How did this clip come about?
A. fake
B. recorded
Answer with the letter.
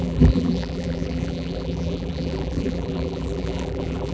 A